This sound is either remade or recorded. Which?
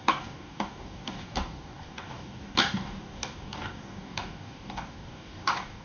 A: remade